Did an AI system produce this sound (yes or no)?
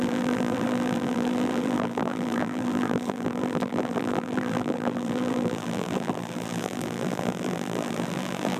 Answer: yes